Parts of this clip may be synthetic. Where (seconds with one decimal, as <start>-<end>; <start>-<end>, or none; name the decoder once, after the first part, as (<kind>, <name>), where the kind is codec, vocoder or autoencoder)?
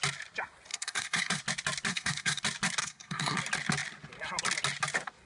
0.7-1.4 (codec, SNAC); 1.9-2.4; 2.8-3.4